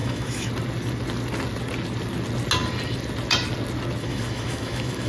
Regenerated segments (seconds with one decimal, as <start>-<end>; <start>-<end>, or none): 0.0-0.5; 4.0-5.1